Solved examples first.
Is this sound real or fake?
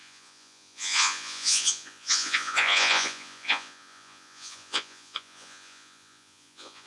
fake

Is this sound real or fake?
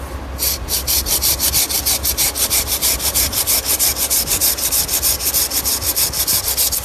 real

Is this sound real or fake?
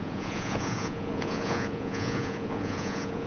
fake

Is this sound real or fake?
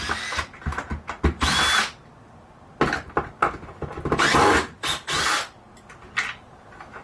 real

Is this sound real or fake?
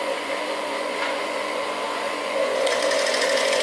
fake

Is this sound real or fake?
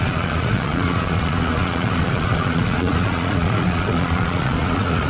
fake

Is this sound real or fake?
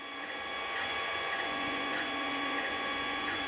fake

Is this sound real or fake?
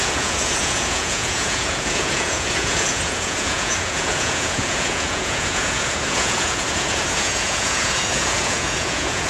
fake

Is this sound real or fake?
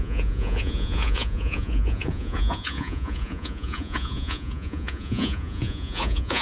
fake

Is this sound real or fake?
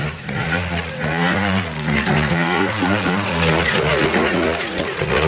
fake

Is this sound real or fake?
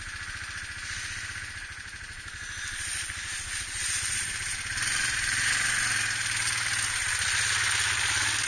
real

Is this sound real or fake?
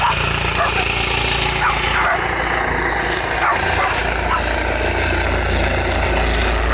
real